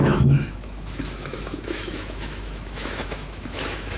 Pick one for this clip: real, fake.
fake